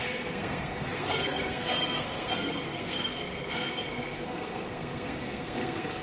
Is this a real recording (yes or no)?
no